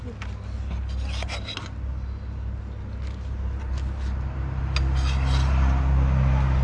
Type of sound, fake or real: real